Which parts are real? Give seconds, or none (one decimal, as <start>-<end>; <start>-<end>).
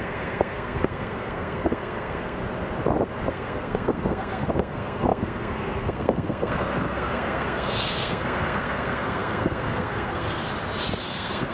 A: 2.4-3.3; 10.4-11.0